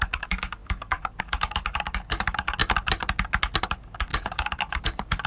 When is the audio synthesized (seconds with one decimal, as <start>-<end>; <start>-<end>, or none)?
0.0-2.6; 3.6-5.3